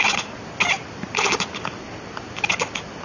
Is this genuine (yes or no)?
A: yes